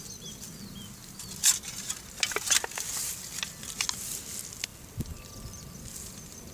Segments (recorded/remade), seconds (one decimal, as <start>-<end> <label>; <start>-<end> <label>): 0.0-6.5 recorded

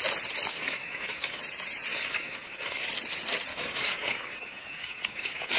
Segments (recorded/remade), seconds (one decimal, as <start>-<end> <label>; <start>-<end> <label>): 0.0-0.5 recorded; 0.5-1.4 remade; 1.4-1.9 recorded; 1.9-2.9 remade; 2.9-3.5 recorded; 3.5-5.6 remade

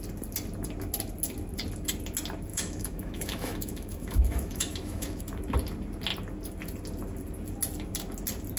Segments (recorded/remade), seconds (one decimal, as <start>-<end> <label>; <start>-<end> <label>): 0.0-2.5 recorded; 2.5-5.2 remade; 5.2-8.6 recorded

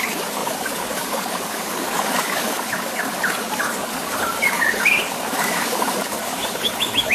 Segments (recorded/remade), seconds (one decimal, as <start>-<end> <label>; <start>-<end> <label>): 0.0-7.1 remade